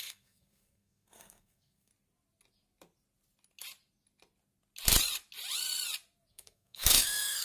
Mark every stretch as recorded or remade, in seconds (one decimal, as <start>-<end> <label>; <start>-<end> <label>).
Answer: 0.0-1.9 remade; 1.9-6.3 recorded; 6.3-7.4 remade